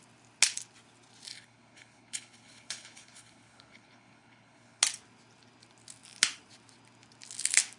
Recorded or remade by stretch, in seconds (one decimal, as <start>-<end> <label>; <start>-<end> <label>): 0.0-1.3 recorded; 1.3-4.8 remade; 4.8-7.8 recorded